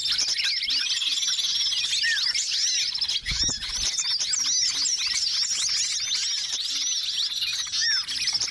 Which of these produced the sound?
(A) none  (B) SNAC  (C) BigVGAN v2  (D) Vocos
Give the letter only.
A